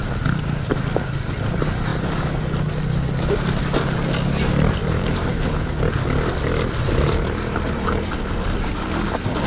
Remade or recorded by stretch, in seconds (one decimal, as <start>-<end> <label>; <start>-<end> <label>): 0.0-4.8 recorded; 4.8-5.4 remade; 5.4-9.5 recorded